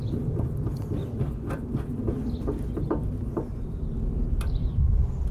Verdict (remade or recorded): recorded